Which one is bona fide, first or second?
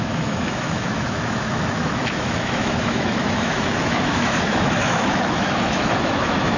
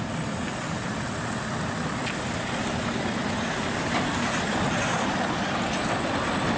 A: second